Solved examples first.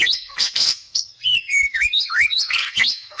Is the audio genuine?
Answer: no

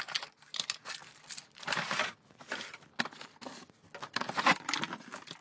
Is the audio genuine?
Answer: yes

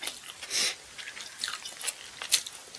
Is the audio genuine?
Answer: yes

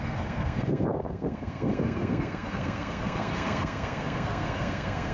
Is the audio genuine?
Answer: no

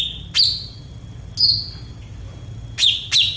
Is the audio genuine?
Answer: yes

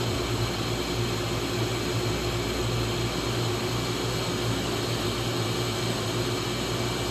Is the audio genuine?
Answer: yes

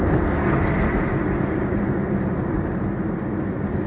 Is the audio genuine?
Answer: yes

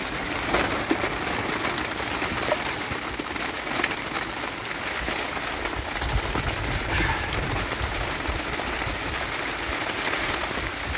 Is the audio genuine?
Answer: yes